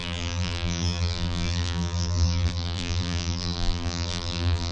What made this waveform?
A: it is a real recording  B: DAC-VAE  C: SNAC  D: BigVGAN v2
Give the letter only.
D